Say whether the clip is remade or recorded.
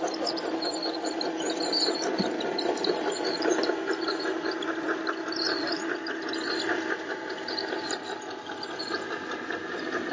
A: recorded